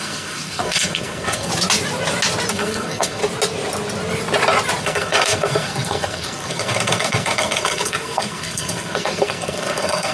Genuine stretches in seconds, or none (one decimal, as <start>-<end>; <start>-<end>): 1.5-2.5; 3.2-4.8

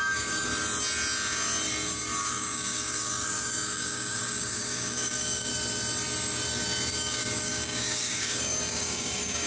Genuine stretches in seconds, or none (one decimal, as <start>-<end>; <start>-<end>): 0.5-2.2; 5.5-6.9

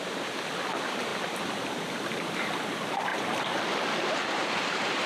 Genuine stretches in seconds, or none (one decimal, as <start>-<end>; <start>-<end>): 0.0-1.1; 2.3-3.1

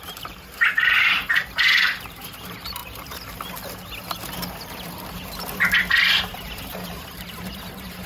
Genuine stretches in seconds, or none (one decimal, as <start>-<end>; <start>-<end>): 2.8-6.2